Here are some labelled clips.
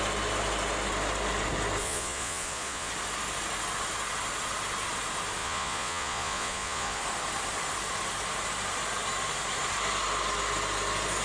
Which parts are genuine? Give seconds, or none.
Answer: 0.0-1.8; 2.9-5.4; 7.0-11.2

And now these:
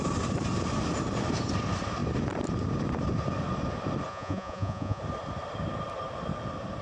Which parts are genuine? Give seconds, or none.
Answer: 0.0-4.1; 5.0-6.8

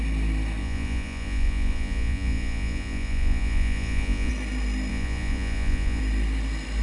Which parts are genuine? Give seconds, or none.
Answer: 0.0-0.6; 4.3-4.9; 6.0-6.8

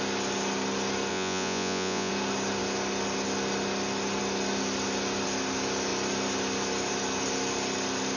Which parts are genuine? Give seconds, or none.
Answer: 0.0-1.1; 2.1-8.2

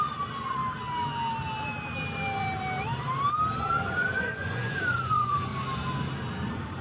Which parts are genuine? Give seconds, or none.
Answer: 0.6-3.6; 5.5-6.8

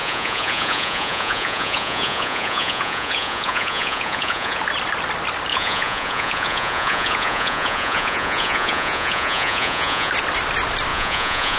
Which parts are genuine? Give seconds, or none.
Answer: 4.6-5.5; 10.1-10.9